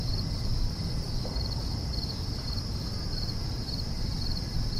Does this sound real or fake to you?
real